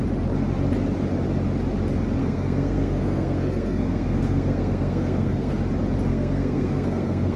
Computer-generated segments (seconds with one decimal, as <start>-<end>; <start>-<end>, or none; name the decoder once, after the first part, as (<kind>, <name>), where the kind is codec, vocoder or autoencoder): 2.2-5.5 (codec, SNAC); 6.1-7.4